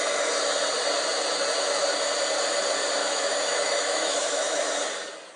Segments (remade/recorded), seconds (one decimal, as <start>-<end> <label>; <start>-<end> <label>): 0.0-3.0 recorded; 3.0-4.8 remade; 4.8-5.4 recorded

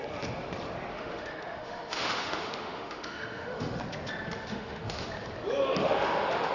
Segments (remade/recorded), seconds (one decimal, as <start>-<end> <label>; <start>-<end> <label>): 0.0-0.9 recorded; 0.9-3.8 remade; 3.8-4.5 recorded; 4.5-5.1 remade; 5.1-5.8 recorded; 5.8-6.5 remade

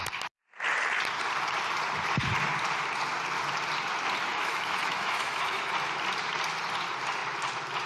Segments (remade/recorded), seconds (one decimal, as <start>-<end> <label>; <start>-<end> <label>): 0.0-4.3 recorded; 4.3-5.7 remade; 5.7-7.9 recorded